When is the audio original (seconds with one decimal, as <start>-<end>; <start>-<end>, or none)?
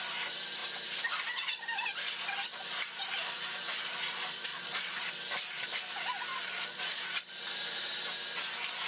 0.0-4.5; 5.1-6.3; 7.3-8.9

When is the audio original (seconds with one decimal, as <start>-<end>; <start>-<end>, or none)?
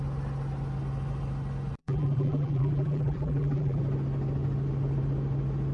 0.0-1.8; 3.8-5.7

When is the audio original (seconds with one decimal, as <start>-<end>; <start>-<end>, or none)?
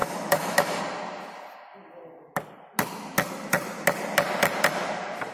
0.8-5.3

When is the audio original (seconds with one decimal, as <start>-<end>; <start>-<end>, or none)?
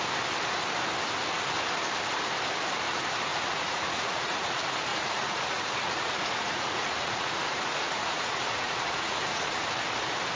0.0-3.3; 4.5-4.9; 9.7-10.4